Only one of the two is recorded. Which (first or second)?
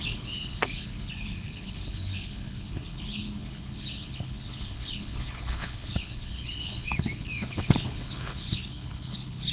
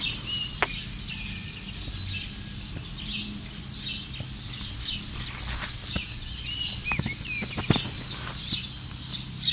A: second